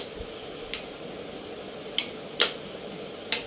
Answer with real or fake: real